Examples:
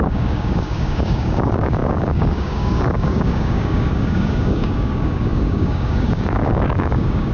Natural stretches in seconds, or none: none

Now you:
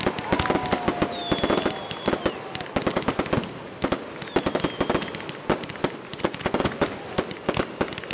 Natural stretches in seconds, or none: 0.0-6.1; 6.8-8.1

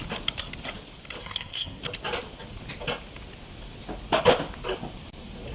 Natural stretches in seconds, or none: 0.0-1.2; 1.8-5.5

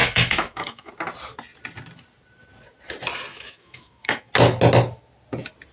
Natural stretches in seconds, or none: 0.9-3.3; 4.3-5.7

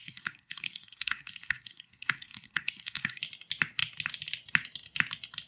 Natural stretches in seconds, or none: 3.2-5.5